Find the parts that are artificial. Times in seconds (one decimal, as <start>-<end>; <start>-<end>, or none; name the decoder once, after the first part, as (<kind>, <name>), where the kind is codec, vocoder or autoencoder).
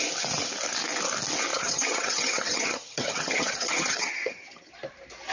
1.5-4.7 (vocoder, HiFi-GAN)